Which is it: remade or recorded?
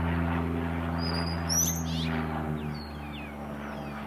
recorded